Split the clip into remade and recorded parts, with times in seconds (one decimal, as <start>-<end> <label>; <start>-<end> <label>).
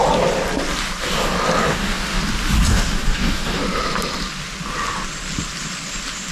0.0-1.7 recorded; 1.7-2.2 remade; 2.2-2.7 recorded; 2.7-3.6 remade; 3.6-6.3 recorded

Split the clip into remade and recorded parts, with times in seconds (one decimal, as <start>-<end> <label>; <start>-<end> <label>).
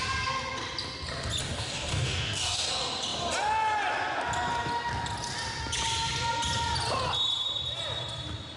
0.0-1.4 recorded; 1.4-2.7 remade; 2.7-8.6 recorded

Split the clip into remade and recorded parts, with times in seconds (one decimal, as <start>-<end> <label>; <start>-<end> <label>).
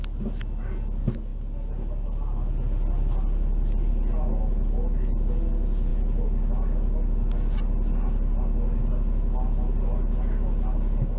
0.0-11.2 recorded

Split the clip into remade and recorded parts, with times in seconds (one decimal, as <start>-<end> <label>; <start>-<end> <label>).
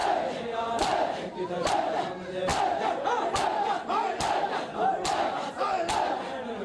0.0-6.6 recorded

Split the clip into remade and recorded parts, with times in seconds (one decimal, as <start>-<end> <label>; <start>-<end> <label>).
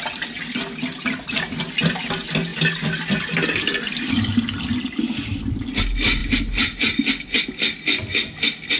0.0-8.8 recorded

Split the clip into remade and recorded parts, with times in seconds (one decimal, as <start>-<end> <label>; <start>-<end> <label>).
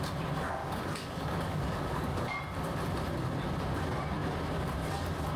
0.0-0.6 recorded; 0.6-2.4 remade; 2.4-5.4 recorded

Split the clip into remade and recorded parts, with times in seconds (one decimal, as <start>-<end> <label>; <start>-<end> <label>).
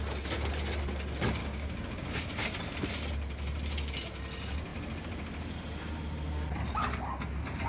0.0-1.4 recorded; 1.4-2.1 remade; 2.1-7.7 recorded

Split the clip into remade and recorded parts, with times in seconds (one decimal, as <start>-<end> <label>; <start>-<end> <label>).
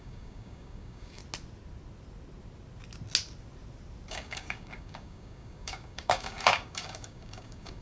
0.0-1.2 remade; 1.2-4.1 recorded; 4.1-7.8 remade